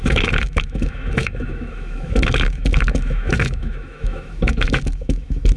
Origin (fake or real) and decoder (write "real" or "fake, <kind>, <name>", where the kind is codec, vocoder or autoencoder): fake, autoencoder, DAC-VAE